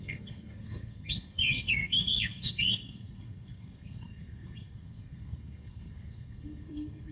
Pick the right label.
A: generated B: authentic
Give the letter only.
A